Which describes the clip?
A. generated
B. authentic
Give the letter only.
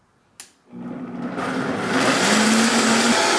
B